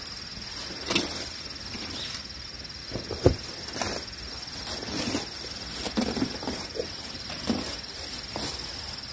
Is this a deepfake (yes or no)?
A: no